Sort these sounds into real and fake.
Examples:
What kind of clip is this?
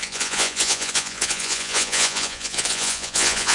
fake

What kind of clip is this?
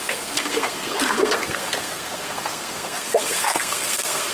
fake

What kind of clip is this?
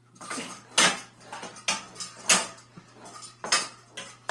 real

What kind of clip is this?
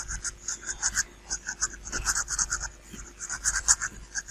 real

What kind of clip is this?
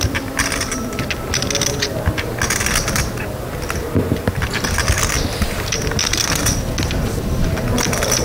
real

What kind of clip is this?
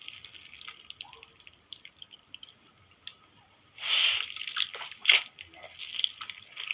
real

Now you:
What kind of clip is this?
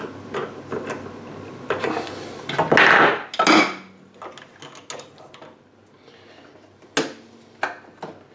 real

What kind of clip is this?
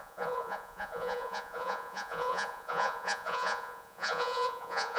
fake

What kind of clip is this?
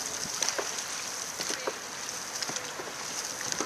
real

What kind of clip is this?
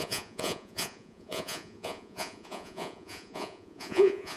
fake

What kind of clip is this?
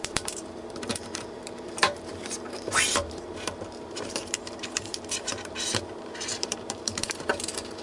fake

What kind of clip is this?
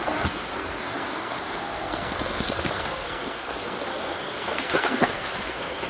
fake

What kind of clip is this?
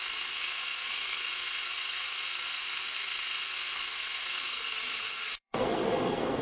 fake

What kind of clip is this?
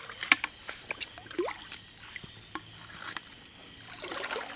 real